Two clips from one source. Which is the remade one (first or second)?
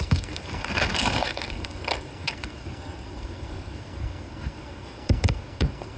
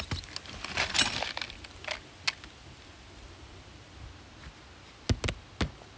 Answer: first